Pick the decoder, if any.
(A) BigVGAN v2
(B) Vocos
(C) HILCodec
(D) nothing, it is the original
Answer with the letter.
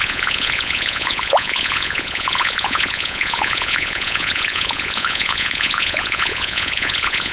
B